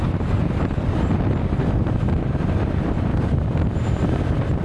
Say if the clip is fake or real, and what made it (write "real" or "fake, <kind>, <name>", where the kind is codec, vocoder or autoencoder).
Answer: real